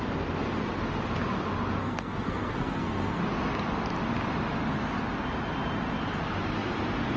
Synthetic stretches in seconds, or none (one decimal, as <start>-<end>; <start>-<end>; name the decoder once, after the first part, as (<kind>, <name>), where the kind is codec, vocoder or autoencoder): 1.8-3.2 (codec, SNAC)